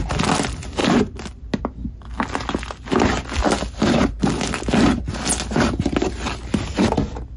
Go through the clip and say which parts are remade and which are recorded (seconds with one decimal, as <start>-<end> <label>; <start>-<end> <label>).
0.0-0.8 recorded; 0.8-1.4 remade; 1.4-7.4 recorded